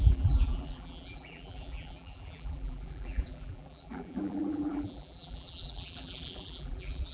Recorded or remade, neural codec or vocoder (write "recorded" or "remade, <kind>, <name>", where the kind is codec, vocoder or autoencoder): remade, vocoder, BigVGAN v2